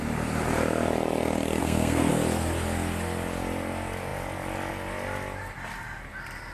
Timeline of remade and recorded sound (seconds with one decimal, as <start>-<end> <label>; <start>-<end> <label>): 0.0-1.6 recorded; 1.6-2.1 remade; 2.1-6.5 recorded

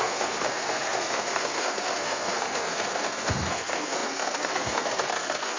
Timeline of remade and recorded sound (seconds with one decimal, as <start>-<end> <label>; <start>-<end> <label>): 0.0-5.6 remade